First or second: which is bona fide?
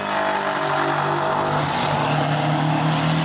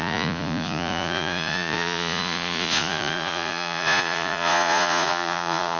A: first